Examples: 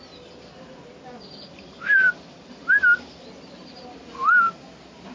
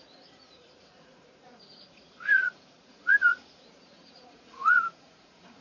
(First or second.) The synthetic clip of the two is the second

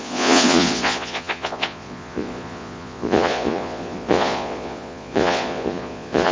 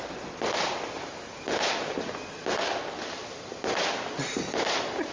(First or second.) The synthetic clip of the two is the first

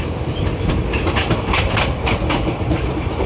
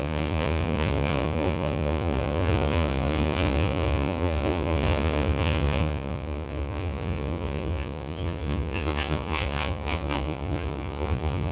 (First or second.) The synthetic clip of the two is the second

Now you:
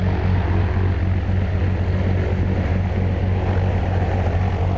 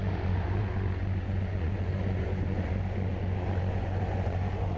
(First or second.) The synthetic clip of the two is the second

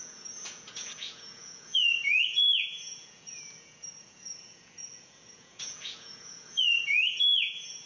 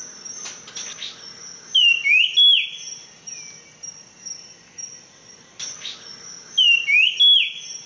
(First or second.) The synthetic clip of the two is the first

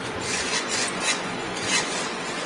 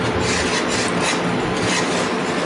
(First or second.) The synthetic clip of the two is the first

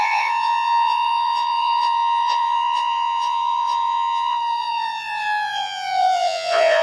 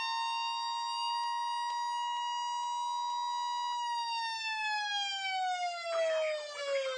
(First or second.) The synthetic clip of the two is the first